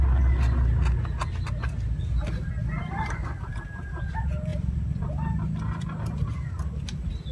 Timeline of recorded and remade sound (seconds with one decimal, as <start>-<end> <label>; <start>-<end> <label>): 0.0-7.3 recorded